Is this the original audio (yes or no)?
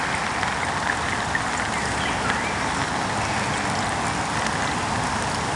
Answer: yes